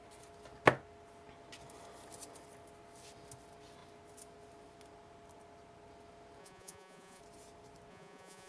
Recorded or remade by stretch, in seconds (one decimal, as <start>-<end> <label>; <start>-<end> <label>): 0.0-6.4 recorded; 6.4-7.2 remade; 7.2-7.9 recorded; 7.9-8.5 remade